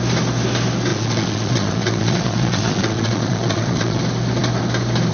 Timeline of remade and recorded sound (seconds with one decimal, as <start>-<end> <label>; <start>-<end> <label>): 0.0-0.9 recorded; 0.9-4.0 remade; 4.0-5.1 recorded